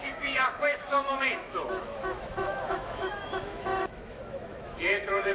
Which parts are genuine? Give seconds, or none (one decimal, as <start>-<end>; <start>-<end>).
none